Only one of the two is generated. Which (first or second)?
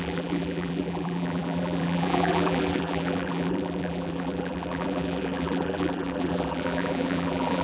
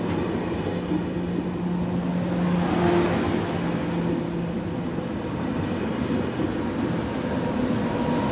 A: first